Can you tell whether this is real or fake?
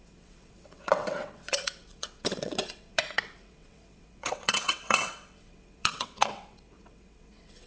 fake